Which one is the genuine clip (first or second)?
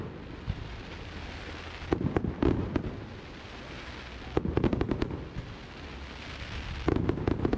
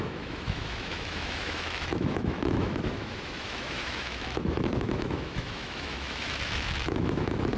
first